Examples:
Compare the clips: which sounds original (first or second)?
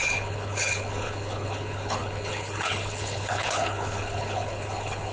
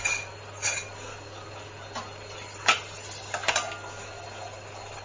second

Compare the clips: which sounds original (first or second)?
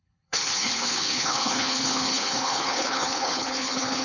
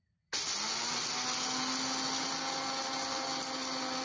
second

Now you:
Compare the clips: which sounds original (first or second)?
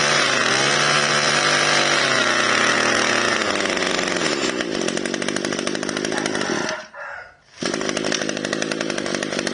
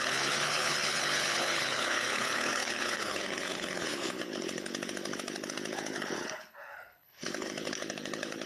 first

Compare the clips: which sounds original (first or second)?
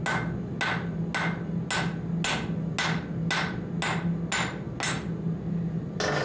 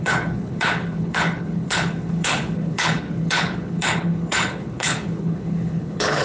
first